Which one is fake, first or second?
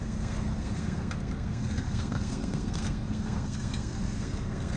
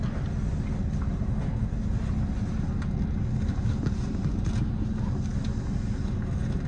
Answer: first